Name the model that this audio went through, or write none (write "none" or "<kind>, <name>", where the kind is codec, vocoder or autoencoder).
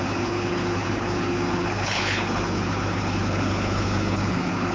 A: codec, HILCodec